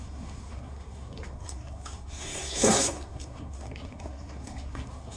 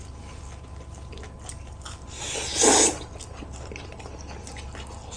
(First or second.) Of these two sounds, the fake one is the first